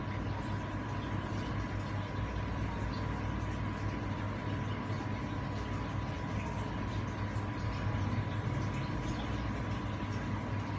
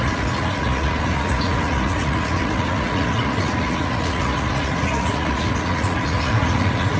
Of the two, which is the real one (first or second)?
first